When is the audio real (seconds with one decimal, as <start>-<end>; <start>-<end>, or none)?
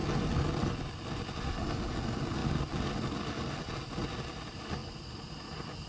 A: 0.0-5.9